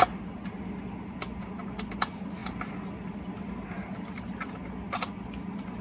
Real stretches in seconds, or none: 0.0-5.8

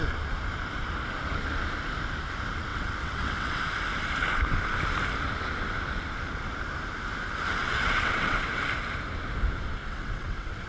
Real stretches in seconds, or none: 0.0-2.7; 3.6-7.6; 8.6-9.8

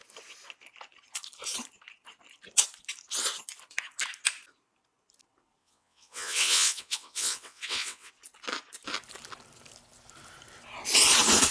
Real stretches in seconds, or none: 0.0-5.6; 8.1-11.5

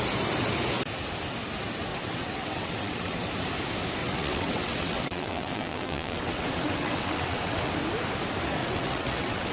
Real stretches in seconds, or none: 0.0-1.9; 3.3-4.0; 7.7-8.6

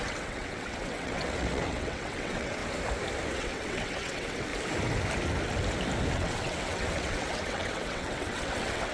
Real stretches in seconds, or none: 2.6-3.3; 4.5-6.1